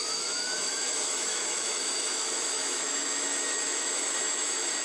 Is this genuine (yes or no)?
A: no